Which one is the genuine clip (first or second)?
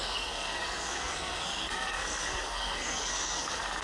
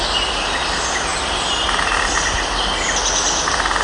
second